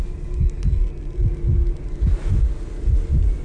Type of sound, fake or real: real